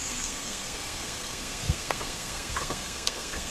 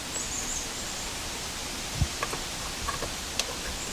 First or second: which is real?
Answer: second